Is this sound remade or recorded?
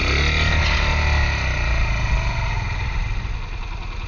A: recorded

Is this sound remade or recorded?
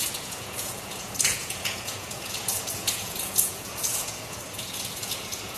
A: remade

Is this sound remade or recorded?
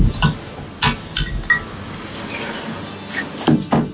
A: recorded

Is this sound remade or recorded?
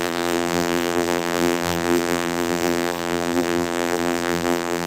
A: remade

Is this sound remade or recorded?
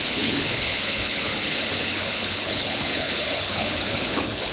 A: remade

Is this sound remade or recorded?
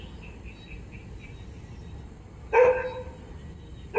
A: recorded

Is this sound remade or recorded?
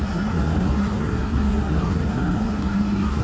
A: remade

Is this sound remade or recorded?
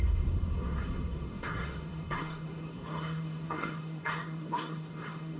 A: remade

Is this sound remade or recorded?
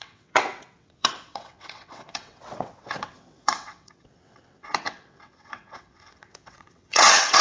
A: remade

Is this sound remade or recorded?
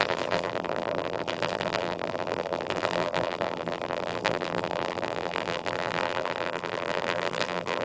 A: remade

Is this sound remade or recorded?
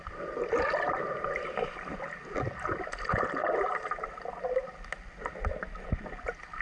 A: recorded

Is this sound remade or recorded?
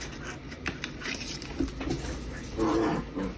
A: recorded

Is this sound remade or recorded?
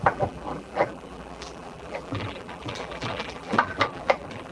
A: remade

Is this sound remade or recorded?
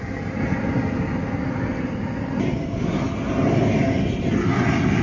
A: recorded